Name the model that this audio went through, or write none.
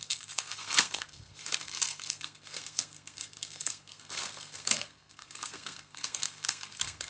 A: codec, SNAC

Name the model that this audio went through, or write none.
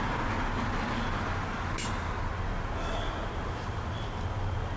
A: none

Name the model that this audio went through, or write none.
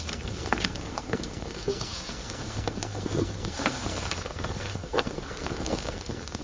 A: codec, SNAC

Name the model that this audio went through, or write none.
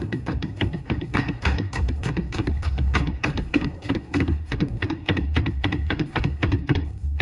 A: codec, SNAC